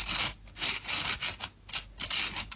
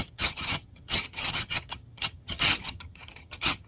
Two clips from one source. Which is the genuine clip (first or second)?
first